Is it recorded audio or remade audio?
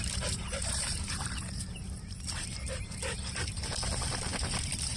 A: remade